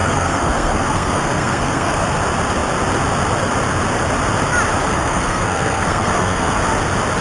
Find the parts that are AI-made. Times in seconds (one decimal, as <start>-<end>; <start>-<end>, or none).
0.0-2.1; 4.9-6.6